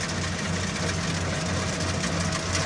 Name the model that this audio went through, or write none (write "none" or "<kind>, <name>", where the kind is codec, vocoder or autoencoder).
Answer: none